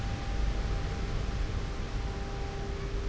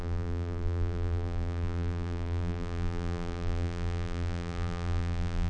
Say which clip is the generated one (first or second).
second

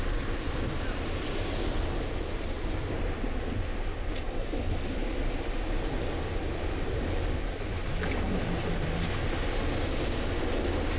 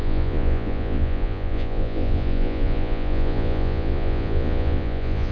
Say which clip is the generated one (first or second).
second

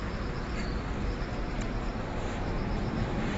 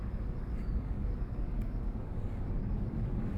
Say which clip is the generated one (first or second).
second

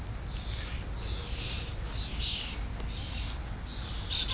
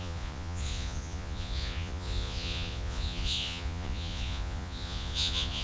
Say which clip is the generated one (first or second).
second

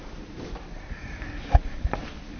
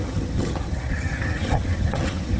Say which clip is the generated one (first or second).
second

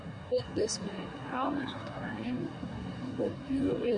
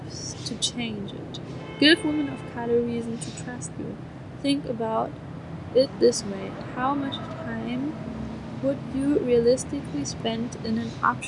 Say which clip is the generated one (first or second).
first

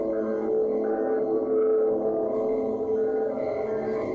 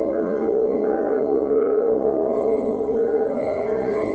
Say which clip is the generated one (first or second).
second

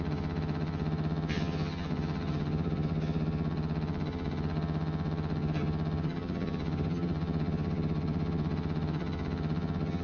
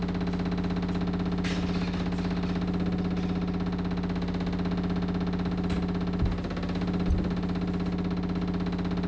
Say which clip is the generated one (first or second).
first